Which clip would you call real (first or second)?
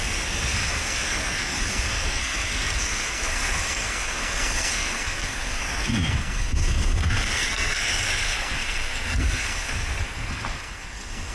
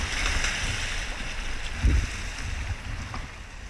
second